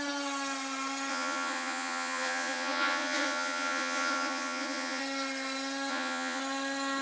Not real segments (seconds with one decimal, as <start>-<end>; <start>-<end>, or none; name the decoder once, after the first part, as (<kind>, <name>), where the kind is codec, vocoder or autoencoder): 1.1-5.0 (vocoder, Vocos); 5.9-6.4